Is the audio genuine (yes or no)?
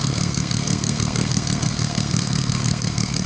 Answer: no